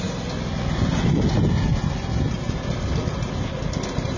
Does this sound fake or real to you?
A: real